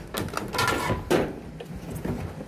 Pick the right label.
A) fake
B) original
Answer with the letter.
B